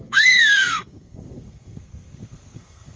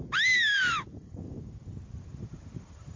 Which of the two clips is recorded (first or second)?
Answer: second